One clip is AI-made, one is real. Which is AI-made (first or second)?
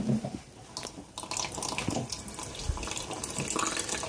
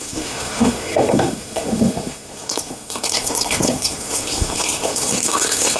second